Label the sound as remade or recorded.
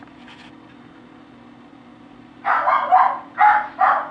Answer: recorded